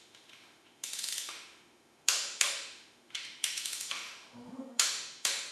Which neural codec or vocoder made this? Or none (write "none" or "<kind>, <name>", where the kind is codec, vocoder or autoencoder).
autoencoder, DAC-VAE